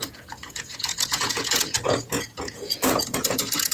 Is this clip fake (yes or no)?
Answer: yes